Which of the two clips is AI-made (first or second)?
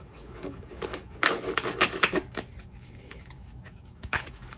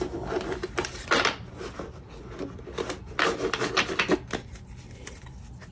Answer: first